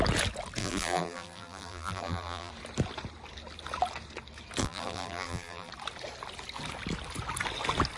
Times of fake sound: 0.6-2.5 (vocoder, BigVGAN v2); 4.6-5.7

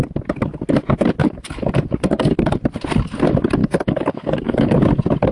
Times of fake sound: 1.2-2.6 (codec, DAC); 3.6-4.8

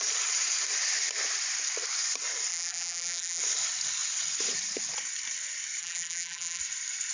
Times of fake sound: 2.5-3.4 (vocoder, BigVGAN v2); 5.8-6.6

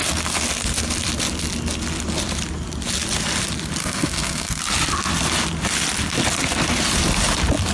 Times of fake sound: 3.8-4.6 (codec, SNAC)

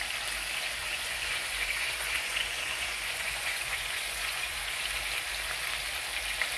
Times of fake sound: 0.8-4.8 (vocoder, Vocos)